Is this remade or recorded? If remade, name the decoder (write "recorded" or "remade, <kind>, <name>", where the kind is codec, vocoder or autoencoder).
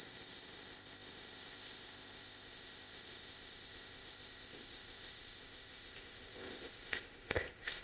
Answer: remade, codec, ZipCodec